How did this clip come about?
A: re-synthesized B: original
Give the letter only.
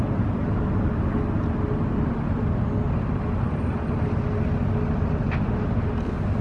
B